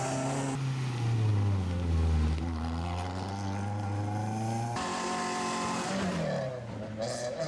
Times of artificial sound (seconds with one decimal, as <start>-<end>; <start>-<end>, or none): none